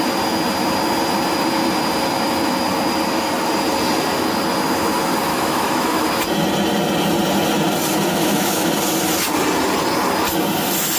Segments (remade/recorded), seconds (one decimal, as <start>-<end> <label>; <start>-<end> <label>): 0.0-5.3 recorded; 5.3-6.1 remade; 6.1-8.1 recorded; 8.1-8.7 remade; 8.7-11.0 recorded